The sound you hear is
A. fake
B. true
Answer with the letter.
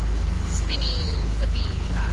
A